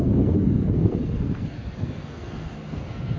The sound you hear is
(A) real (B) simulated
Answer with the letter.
B